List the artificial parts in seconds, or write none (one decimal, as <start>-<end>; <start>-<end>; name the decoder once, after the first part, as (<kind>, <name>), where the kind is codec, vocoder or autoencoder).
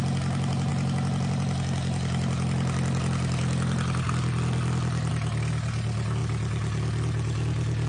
none